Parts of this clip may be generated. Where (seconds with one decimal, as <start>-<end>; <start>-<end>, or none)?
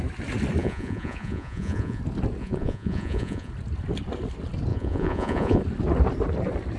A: 0.6-2.0; 2.4-3.5; 4.7-5.6